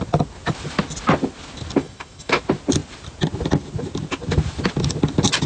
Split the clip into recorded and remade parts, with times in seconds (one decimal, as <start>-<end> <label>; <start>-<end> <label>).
0.0-1.8 recorded; 1.8-2.3 remade; 2.3-5.5 recorded